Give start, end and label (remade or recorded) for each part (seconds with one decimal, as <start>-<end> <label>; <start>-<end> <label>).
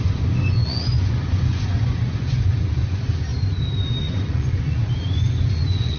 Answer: 0.0-3.3 remade; 3.3-4.0 recorded; 4.0-6.0 remade